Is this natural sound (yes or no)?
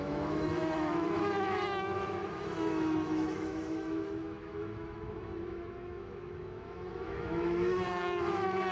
no